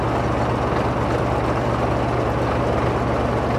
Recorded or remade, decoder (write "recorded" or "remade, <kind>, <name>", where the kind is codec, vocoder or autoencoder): recorded